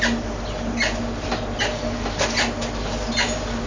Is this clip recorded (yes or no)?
yes